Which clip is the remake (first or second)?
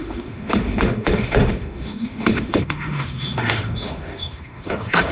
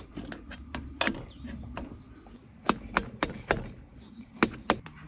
first